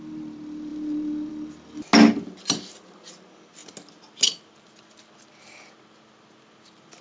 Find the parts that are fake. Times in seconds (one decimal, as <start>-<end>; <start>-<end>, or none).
none